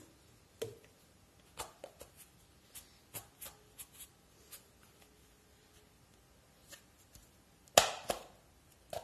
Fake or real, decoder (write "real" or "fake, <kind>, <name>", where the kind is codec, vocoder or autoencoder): real